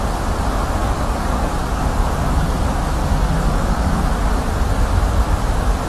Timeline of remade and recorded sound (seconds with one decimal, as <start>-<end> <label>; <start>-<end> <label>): 0.0-0.8 recorded; 0.8-2.7 remade; 2.7-3.1 recorded; 3.1-3.9 remade; 3.9-5.9 recorded